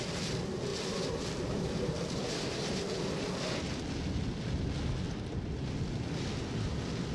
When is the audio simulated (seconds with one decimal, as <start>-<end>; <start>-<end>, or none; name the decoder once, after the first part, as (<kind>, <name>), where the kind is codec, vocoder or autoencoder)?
none